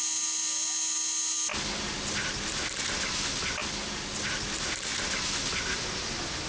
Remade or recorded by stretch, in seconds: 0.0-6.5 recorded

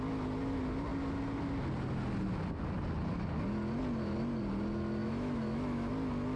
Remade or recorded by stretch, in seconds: 0.0-5.0 recorded; 5.0-5.9 remade; 5.9-6.4 recorded

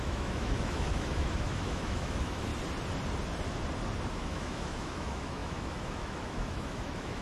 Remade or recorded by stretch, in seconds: 0.0-2.5 remade; 2.5-4.1 recorded; 4.1-7.2 remade

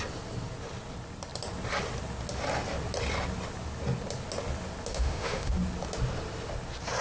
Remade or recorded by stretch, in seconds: 0.0-4.9 recorded; 4.9-5.5 remade; 5.5-7.0 recorded

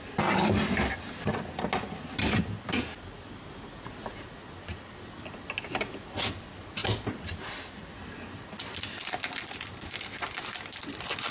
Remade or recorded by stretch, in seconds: 0.0-11.3 recorded

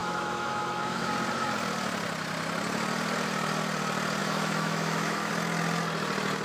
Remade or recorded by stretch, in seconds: 0.0-1.0 remade; 1.0-4.2 recorded; 4.2-5.3 remade; 5.3-6.4 recorded